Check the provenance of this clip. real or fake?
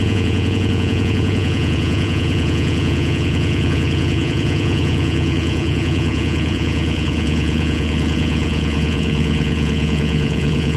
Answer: fake